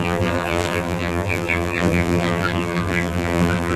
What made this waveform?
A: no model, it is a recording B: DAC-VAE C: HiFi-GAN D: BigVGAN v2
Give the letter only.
D